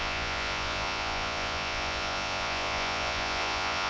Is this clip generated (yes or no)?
yes